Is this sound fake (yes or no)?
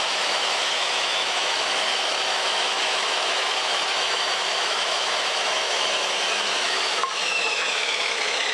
yes